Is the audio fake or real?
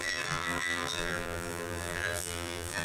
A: fake